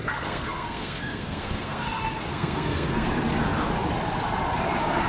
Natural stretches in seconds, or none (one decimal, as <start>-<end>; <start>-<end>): 3.1-5.1

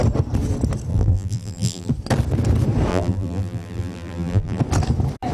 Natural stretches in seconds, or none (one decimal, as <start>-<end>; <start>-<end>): 0.0-0.9; 1.9-2.9; 4.6-5.3

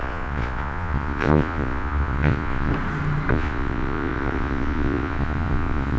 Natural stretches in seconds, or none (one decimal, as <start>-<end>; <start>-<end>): 2.7-3.3

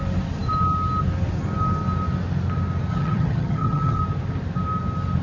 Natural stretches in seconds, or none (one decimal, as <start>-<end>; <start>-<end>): 0.0-2.9; 4.0-5.2

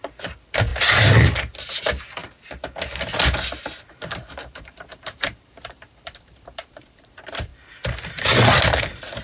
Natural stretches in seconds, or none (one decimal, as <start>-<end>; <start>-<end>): 0.7-1.6; 2.2-3.9; 7.5-9.2

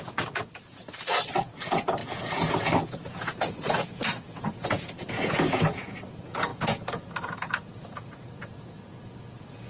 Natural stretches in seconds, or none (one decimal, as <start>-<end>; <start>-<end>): 0.8-1.4; 2.0-2.8

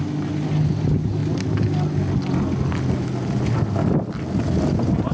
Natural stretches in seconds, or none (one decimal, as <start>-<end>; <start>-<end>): 0.0-5.1

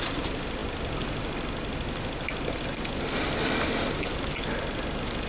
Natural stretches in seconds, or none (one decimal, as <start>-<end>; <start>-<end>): 0.0-5.3